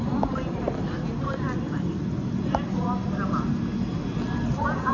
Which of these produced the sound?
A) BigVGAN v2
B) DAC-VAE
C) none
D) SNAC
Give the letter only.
C